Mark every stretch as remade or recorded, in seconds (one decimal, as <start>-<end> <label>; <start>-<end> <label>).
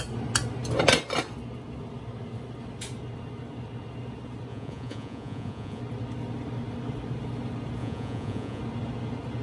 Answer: 0.0-4.5 recorded; 4.5-5.8 remade; 5.8-7.8 recorded; 7.8-8.6 remade; 8.6-9.4 recorded